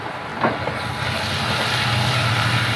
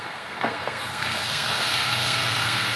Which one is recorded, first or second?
first